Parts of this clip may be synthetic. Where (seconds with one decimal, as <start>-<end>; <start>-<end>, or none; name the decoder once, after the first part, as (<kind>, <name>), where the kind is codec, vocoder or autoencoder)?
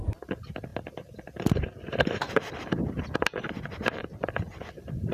none